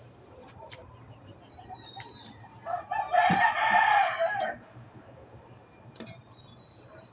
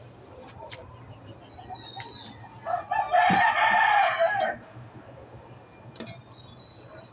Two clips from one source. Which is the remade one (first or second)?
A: first